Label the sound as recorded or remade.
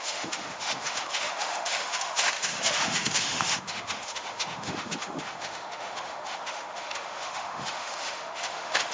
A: remade